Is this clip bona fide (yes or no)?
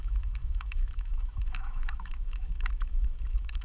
no